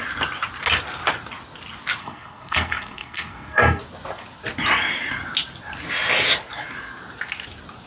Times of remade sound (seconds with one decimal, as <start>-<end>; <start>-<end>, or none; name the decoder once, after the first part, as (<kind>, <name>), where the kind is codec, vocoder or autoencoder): 2.0-3.8 (codec, SNAC)